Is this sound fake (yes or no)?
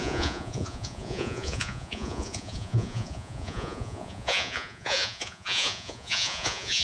yes